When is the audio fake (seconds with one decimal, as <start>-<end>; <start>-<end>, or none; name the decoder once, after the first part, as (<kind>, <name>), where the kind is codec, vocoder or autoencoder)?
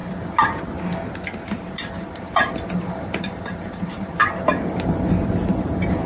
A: 2.0-4.2 (vocoder, BigVGAN v2); 5.5-6.1